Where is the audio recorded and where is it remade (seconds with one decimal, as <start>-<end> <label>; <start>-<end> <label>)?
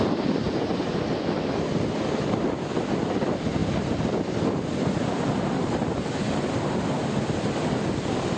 0.0-8.4 recorded